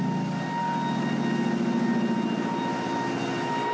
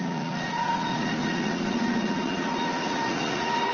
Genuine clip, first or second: first